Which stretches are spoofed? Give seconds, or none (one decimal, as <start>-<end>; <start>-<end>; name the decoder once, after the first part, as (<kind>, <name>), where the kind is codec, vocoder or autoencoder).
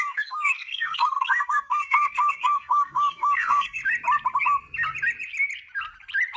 0.0-3.8 (codec, SNAC)